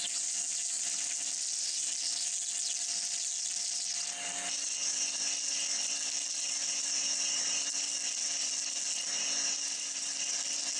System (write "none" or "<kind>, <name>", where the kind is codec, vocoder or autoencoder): none